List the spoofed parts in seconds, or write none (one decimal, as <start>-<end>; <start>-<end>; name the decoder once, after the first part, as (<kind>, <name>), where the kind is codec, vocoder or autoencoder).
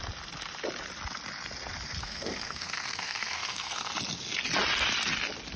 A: 2.0-3.9 (codec, SNAC)